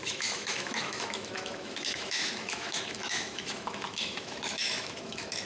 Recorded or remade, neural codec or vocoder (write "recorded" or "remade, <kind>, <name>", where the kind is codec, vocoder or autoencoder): remade, autoencoder, DAC-VAE